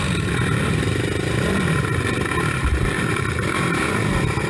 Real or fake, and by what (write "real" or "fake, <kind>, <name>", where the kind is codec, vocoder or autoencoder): real